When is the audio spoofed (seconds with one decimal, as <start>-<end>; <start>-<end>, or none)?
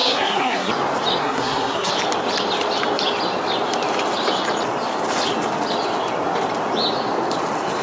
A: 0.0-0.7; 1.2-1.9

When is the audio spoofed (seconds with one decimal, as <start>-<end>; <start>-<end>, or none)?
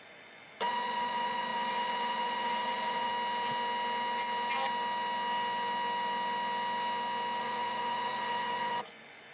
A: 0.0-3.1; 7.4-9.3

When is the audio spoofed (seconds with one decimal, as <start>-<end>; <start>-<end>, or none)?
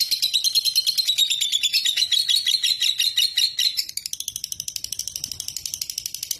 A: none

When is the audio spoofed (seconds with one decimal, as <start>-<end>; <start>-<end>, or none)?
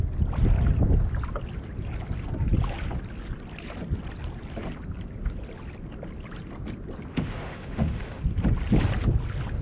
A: 7.1-8.2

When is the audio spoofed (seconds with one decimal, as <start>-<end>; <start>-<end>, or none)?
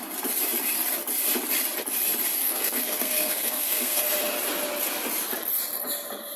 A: 2.4-4.0